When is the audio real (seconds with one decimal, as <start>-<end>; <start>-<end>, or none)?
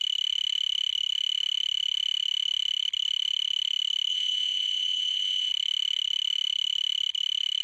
0.0-4.1; 5.5-7.6